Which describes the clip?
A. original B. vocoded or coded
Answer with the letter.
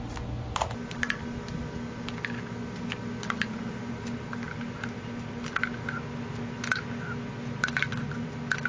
A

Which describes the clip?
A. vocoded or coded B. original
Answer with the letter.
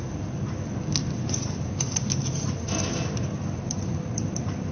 B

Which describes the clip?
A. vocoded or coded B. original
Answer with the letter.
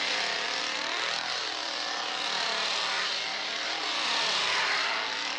B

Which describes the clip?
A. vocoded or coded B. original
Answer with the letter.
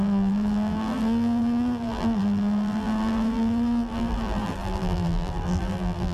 A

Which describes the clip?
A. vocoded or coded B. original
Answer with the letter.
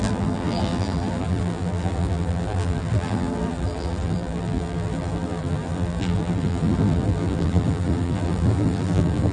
A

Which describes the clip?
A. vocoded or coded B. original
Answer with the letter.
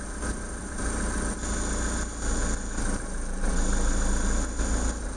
A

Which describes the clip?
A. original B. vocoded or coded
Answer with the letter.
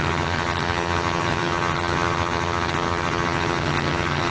B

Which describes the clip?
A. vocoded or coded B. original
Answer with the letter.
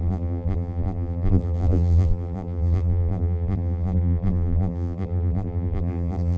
A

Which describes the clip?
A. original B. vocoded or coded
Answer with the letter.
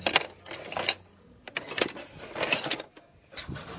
A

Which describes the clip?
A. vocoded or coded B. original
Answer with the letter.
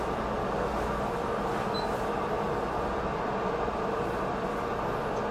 B